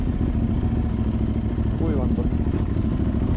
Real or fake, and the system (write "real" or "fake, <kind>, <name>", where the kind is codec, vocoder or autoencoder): fake, vocoder, BigVGAN v2